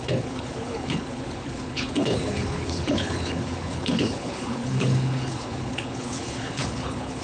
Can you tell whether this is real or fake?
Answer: fake